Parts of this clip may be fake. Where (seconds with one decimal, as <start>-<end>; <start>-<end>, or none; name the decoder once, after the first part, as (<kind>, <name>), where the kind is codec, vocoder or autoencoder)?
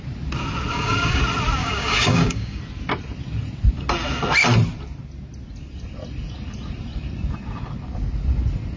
0.7-1.2 (codec, DAC); 1.6-2.6